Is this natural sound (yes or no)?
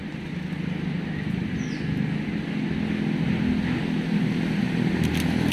yes